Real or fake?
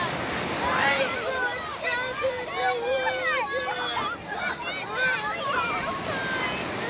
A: real